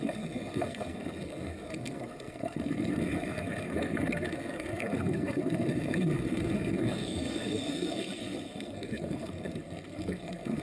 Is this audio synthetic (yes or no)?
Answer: yes